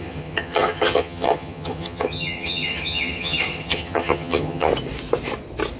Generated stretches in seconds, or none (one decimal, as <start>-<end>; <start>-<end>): 0.0-4.7

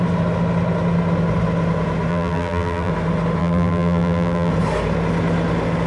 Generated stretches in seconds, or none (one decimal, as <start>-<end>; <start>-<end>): 2.1-2.9; 3.4-4.5

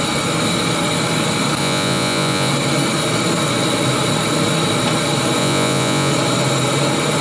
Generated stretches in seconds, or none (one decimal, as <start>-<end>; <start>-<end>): 1.6-2.5; 5.4-6.1

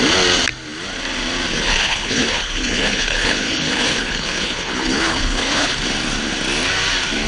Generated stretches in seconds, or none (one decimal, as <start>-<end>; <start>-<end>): 1.5-5.8

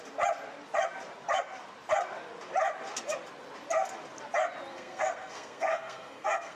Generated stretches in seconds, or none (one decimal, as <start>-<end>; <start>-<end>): 4.7-6.6

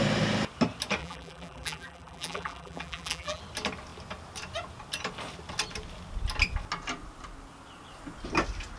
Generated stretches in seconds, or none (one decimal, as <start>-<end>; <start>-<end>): 1.0-3.4